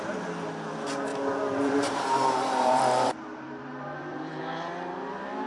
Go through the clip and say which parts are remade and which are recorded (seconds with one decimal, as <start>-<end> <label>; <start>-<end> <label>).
0.0-1.1 recorded; 1.1-4.4 remade; 4.4-5.5 recorded